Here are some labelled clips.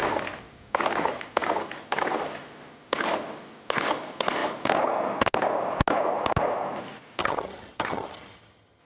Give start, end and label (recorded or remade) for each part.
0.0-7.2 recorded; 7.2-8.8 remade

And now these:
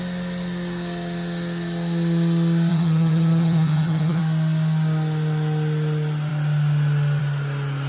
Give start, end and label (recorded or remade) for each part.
0.0-2.7 recorded; 2.7-4.2 remade; 4.2-7.9 recorded